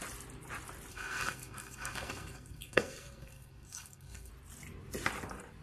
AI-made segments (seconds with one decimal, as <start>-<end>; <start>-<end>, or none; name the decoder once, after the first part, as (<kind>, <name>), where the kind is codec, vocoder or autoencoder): 0.9-4.3 (codec, SNAC)